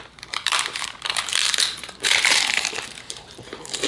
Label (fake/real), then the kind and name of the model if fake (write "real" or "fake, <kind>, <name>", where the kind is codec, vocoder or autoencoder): fake, vocoder, BigVGAN v2